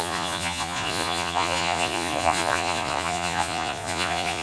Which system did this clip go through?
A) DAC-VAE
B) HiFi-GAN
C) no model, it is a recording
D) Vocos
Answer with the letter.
D